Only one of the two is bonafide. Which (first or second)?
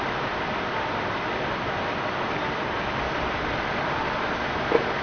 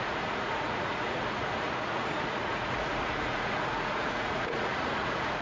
first